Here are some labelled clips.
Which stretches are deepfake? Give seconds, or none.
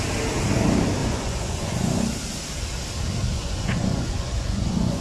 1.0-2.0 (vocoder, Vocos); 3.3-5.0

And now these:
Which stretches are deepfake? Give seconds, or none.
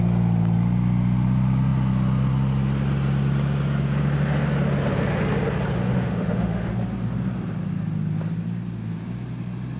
5.8-6.7 (autoencoder, DAC-VAE)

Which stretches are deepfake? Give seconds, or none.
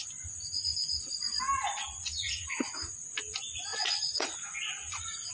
1.8-3.2 (vocoder, Vocos); 3.7-5.3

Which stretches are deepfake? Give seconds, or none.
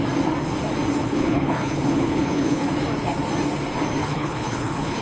1.0-2.7 (codec, HILCodec); 4.0-5.0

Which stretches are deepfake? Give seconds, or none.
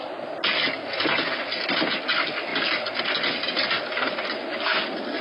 none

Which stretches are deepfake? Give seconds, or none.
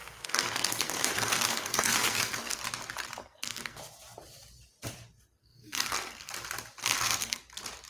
0.0-2.6 (codec, SNAC); 3.2-3.8; 5.4-6.3; 6.8-7.4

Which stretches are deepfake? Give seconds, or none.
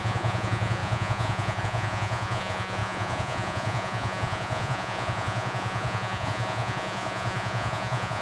0.0-8.2 (vocoder, Vocos)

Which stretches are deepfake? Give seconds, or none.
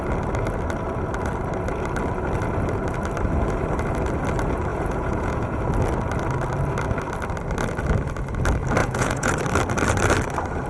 4.7-5.6 (vocoder, Vocos); 8.8-9.3